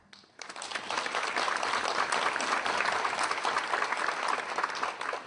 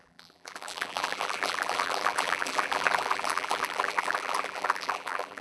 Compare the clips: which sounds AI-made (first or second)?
second